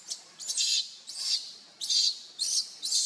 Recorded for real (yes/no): yes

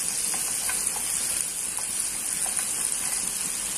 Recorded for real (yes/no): yes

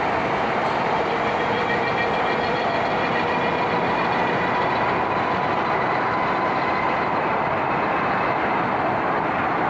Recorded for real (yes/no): yes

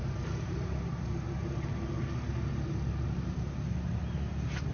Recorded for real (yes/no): yes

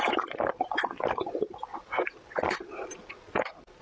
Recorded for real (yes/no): yes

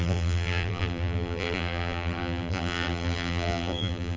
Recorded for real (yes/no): no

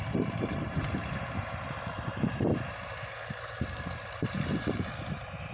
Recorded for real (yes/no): no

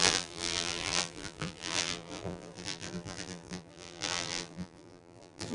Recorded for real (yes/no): no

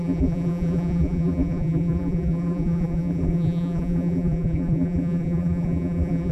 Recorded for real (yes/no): no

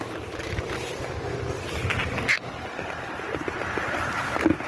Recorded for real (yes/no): yes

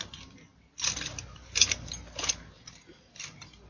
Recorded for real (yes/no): yes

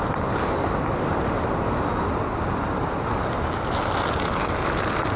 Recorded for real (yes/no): yes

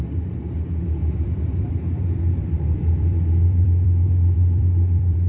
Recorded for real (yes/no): no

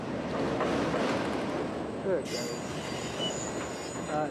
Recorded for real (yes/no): yes